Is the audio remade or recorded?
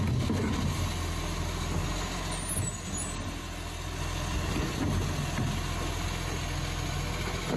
recorded